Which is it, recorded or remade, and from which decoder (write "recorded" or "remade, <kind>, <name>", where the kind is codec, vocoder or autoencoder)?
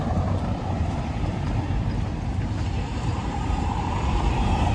remade, vocoder, BigVGAN v2